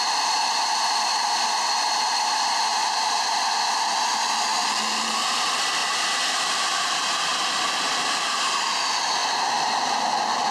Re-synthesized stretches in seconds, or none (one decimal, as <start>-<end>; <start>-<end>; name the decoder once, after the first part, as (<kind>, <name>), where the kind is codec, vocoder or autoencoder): 2.7-3.3 (vocoder, BigVGAN v2); 5.8-7.3; 9.2-10.1